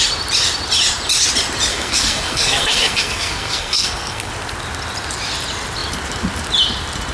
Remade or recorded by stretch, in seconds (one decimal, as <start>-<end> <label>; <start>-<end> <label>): 0.0-1.7 recorded; 1.7-4.3 remade; 4.3-7.1 recorded